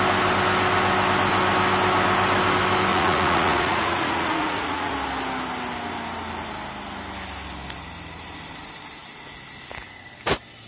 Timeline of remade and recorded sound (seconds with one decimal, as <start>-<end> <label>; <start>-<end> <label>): 0.0-2.9 recorded; 2.9-4.9 remade; 4.9-10.7 recorded